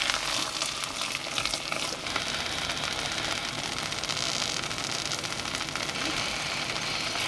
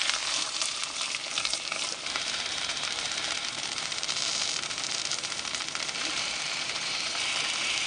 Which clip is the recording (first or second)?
first